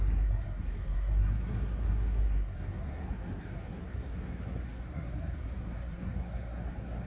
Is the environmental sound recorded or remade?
remade